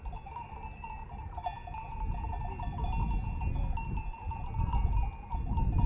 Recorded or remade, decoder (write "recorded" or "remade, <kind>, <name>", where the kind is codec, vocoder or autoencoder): recorded